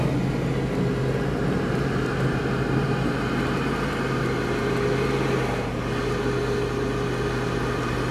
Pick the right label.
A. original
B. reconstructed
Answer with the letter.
A